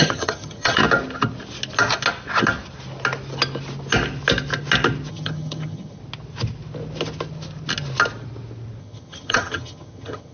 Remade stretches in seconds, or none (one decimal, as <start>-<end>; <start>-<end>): 0.0-0.8; 5.1-6.0; 8.8-10.3